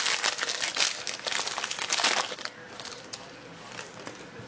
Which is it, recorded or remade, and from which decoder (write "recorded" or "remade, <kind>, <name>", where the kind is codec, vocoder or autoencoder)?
recorded